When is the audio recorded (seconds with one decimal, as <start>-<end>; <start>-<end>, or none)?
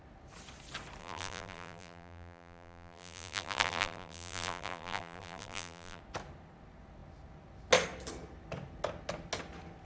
0.0-1.0; 6.0-9.9